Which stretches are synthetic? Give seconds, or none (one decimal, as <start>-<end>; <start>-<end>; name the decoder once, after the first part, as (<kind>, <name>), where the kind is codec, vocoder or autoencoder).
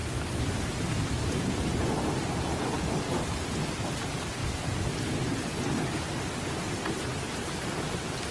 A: 0.0-1.5 (vocoder, BigVGAN v2); 4.4-5.0